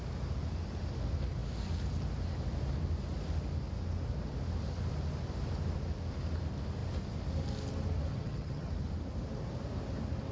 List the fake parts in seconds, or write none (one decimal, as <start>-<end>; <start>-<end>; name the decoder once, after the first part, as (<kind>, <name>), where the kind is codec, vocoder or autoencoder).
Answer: 8.1-8.7 (vocoder, HiFi-GAN)